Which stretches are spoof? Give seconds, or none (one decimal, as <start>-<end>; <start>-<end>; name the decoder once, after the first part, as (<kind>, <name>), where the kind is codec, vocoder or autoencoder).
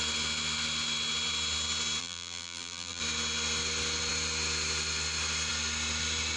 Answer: 2.0-3.0 (vocoder, BigVGAN v2)